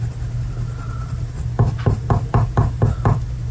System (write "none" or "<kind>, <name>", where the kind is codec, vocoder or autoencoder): none